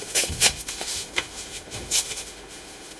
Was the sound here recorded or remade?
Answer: remade